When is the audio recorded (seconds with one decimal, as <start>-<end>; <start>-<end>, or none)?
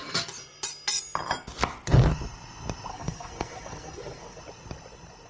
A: 0.0-2.9; 4.4-5.3